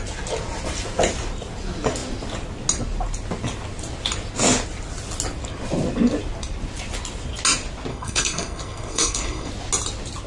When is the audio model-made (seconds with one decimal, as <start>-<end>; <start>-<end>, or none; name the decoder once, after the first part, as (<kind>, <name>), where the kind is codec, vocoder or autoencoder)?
7.9-9.5 (codec, SNAC)